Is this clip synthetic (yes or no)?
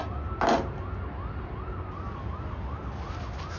no